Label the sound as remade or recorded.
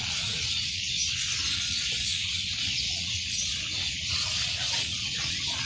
remade